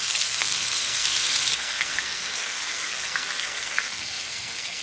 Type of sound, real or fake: fake